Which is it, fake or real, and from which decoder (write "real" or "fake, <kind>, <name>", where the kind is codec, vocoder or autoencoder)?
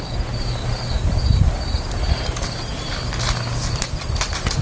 real